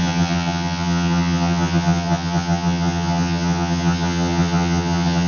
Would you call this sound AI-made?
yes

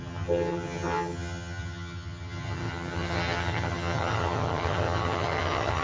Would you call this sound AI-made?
yes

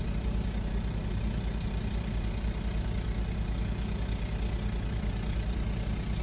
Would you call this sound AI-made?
no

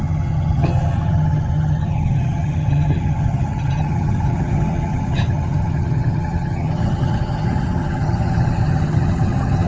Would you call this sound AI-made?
yes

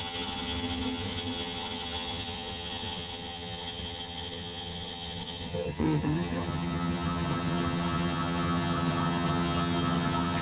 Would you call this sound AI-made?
yes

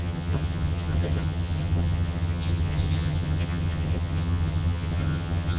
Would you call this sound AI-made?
yes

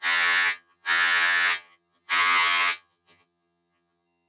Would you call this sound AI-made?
yes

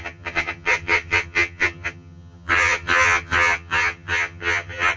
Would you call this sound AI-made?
yes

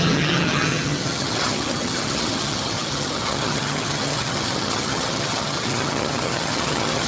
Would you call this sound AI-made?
yes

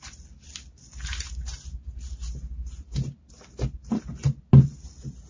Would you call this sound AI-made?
no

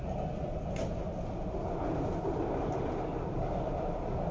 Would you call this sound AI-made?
no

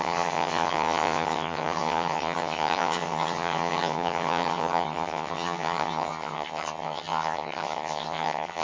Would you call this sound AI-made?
yes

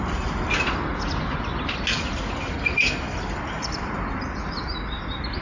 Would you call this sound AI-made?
no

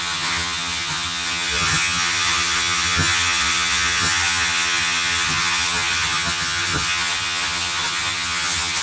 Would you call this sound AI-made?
yes